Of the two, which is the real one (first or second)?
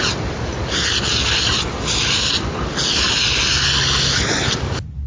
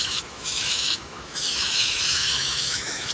first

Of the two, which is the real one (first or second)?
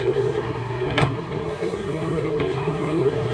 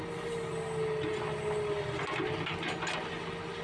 second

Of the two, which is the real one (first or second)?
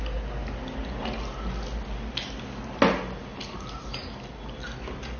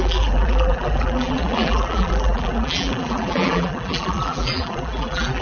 first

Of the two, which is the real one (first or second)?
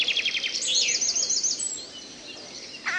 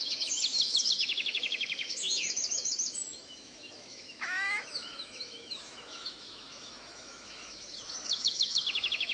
first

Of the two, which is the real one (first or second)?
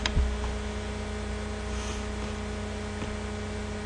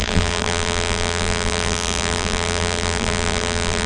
first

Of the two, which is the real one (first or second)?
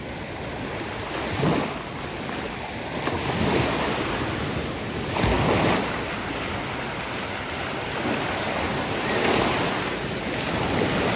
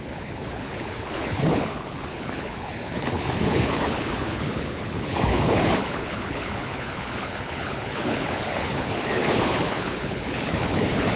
first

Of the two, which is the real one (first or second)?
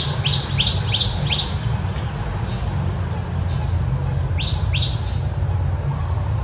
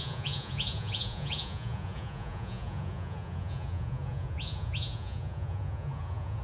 first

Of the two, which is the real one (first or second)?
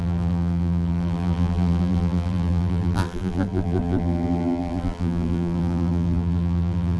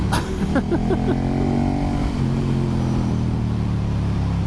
second